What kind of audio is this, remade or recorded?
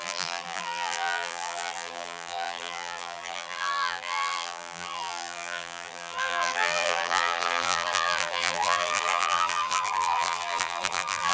remade